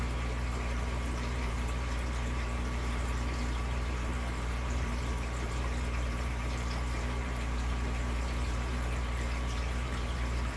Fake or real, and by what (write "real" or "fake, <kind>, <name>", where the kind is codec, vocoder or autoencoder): fake, vocoder, BigVGAN v2